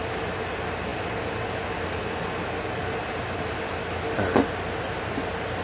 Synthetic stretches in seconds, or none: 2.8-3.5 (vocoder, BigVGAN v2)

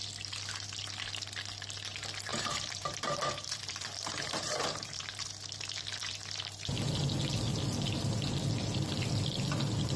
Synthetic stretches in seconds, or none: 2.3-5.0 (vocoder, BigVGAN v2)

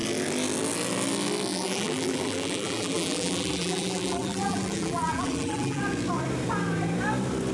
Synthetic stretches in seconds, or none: 1.5-5.8 (vocoder, BigVGAN v2)

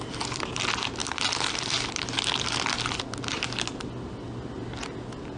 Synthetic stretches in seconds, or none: none

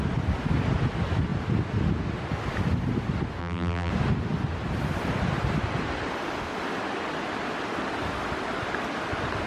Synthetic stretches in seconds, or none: 3.4-3.9 (vocoder, BigVGAN v2)

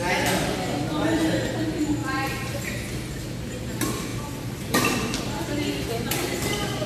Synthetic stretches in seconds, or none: 2.0-2.7 (vocoder, BigVGAN v2); 4.1-5.2

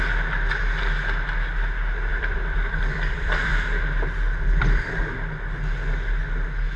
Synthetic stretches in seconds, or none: 2.1-5.0 (vocoder, BigVGAN v2)

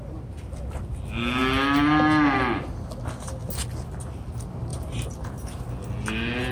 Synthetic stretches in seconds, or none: 4.7-5.6 (vocoder, BigVGAN v2)